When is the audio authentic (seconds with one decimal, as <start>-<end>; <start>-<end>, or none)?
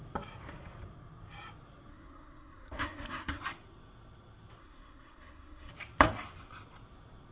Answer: 0.0-1.9; 3.4-4.6; 5.7-7.3